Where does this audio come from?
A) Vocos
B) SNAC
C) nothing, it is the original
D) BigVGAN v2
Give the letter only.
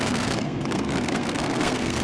B